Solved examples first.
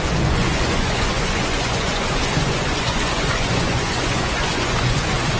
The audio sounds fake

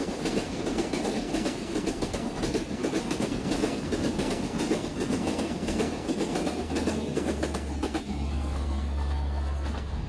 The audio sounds fake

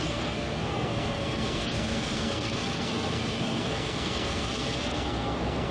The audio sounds fake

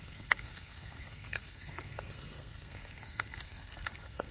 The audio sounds fake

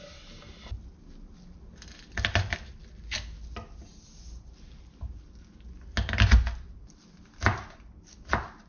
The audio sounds real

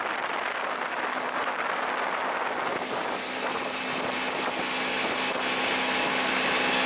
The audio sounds real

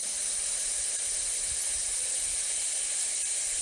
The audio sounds fake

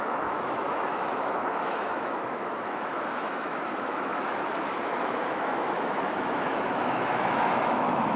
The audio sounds fake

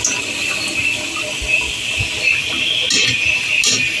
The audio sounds real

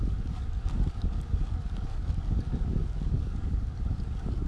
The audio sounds fake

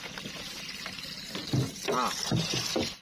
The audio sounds real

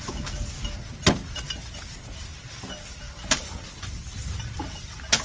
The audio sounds real